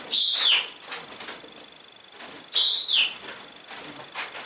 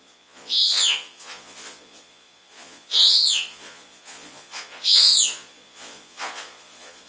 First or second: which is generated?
second